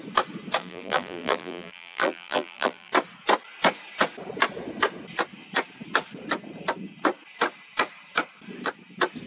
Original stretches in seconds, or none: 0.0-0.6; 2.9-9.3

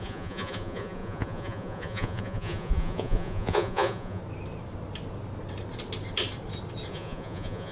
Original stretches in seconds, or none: 4.2-6.9